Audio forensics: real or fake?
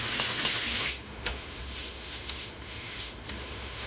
fake